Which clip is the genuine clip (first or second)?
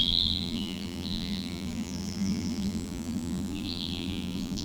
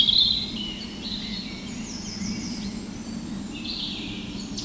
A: second